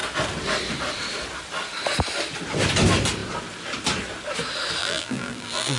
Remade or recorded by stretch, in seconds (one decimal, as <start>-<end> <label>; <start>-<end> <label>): 0.0-4.8 recorded; 4.8-5.8 remade